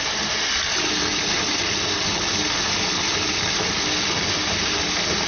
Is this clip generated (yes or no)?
no